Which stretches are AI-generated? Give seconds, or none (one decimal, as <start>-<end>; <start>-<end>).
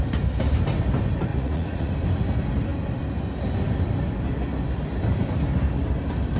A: 1.3-1.9